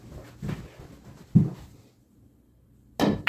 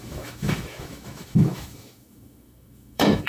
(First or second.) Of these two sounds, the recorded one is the first